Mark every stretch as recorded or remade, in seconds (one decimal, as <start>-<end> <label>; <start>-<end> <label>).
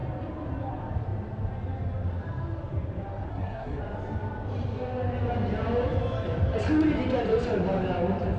0.0-3.3 recorded; 3.3-3.8 remade; 3.8-8.4 recorded